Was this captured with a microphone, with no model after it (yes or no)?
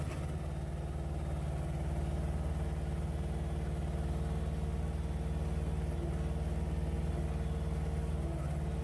yes